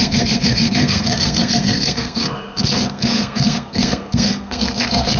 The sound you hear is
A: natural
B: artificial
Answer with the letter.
B